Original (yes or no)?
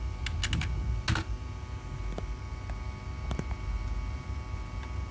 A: yes